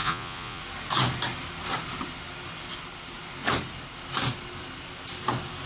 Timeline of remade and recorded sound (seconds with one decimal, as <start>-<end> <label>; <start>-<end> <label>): 0.0-0.6 remade; 0.6-5.7 recorded